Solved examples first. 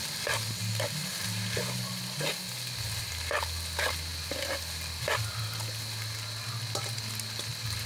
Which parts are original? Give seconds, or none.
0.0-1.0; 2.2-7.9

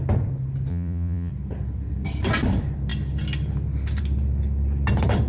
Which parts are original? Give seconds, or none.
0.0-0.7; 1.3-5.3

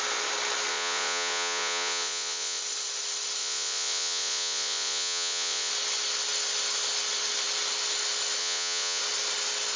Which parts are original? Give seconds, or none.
0.0-0.7; 2.6-3.4; 5.7-8.4; 9.0-9.8

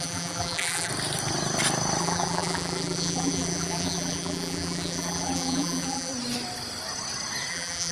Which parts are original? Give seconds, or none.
0.9-2.0; 6.1-7.5

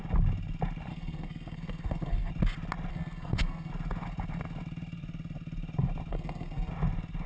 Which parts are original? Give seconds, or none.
0.0-0.9; 2.3-2.9; 3.7-6.1; 6.7-7.3

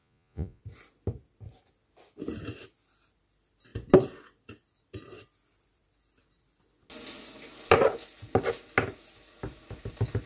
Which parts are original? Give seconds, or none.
0.6-10.3

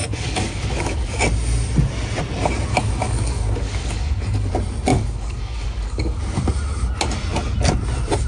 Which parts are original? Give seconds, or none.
1.2-2.7; 4.5-4.9; 6.2-8.3

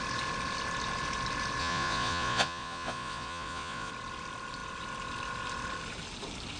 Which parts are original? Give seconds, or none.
0.0-1.6; 3.9-6.6